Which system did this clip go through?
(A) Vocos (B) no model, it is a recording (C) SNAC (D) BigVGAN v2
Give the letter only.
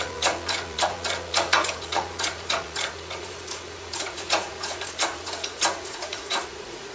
A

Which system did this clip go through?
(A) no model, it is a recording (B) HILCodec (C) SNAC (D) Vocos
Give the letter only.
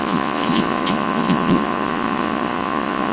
D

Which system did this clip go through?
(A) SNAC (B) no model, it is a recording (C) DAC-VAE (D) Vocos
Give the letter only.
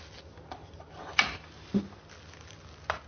B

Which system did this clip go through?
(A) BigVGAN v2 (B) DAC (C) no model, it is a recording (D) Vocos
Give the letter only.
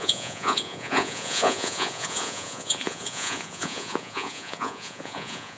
D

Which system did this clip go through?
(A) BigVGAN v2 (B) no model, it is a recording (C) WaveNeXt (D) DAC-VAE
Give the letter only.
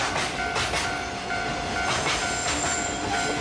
B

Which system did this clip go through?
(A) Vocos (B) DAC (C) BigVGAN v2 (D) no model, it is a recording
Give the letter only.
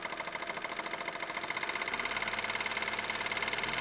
D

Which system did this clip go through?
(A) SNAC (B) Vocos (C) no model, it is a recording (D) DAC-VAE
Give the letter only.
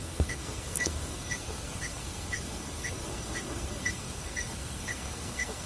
A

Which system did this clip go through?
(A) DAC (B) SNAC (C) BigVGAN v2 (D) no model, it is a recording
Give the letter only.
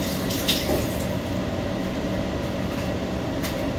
D